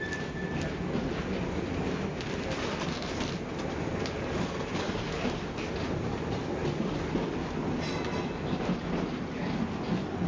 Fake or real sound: real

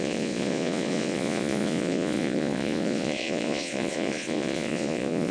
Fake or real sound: fake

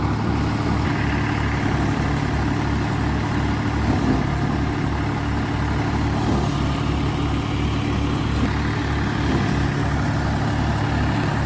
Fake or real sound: real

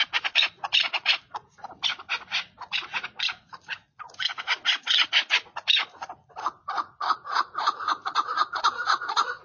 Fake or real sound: fake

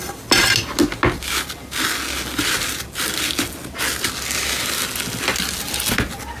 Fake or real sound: real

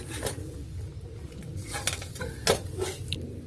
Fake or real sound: real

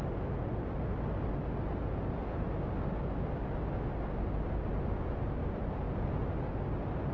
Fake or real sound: real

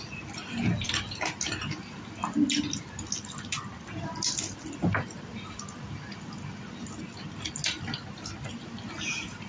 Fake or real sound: real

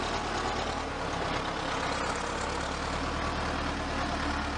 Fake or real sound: real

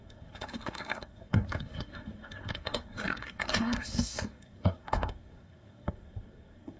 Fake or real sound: fake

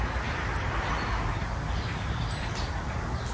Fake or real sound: real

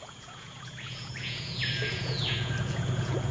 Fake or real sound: fake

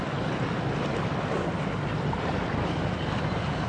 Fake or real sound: real